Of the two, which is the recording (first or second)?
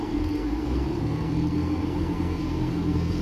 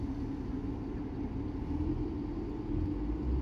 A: second